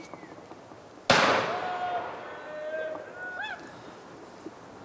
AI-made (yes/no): no